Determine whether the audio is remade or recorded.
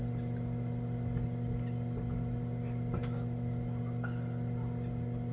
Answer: recorded